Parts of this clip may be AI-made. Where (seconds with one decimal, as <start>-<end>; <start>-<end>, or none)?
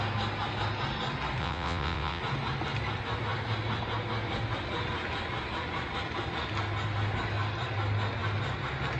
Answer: 1.4-2.2